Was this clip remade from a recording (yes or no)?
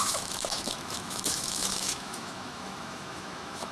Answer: yes